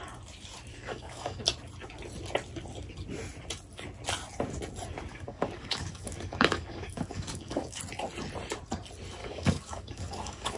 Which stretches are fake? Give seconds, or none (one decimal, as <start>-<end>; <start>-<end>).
0.7-1.4; 5.1-7.8; 9.2-10.6